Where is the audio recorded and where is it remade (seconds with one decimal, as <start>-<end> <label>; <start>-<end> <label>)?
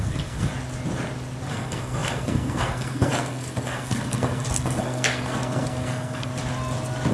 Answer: 0.0-0.5 remade; 0.5-1.5 recorded; 1.5-6.3 remade; 6.3-7.1 recorded